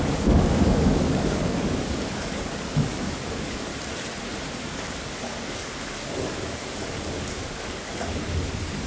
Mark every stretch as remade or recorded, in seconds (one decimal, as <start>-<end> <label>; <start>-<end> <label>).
0.0-3.7 remade; 3.7-4.6 recorded; 4.6-8.9 remade